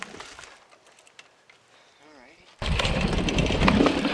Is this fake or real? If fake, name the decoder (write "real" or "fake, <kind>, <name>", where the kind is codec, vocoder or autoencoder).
real